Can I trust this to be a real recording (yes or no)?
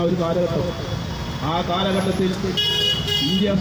yes